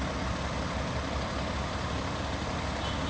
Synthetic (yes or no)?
no